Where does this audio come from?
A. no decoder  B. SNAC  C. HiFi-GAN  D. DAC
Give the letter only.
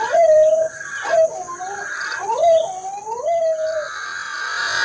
A